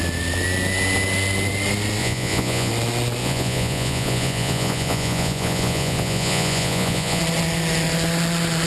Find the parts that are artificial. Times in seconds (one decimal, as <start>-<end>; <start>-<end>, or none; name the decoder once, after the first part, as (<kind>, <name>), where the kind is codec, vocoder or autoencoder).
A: 2.0-2.7 (vocoder, Vocos); 3.2-7.2